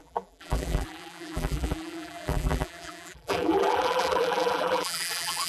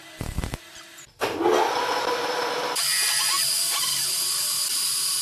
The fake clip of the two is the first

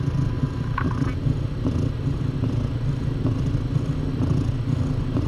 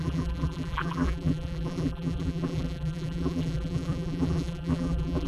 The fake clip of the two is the second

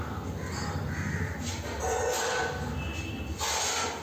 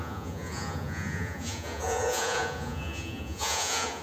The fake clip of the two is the second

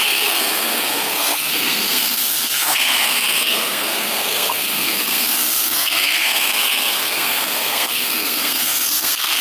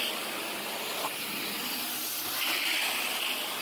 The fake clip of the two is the first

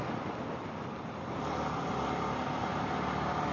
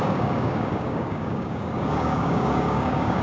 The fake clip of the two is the second